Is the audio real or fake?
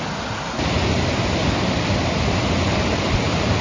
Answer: real